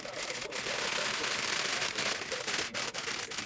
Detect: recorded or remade recorded